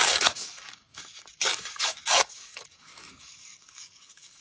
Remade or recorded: remade